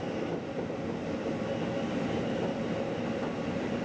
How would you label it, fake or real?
real